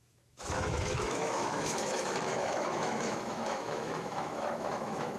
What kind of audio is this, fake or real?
fake